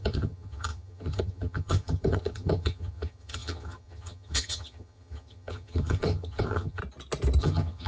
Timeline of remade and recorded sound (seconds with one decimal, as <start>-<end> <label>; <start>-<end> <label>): 0.0-6.8 remade; 6.8-7.4 recorded; 7.4-7.9 remade